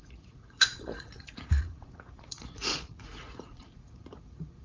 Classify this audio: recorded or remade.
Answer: remade